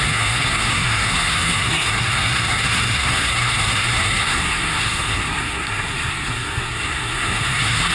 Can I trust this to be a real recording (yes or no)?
no